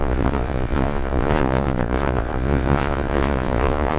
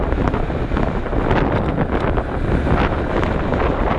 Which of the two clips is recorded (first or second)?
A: second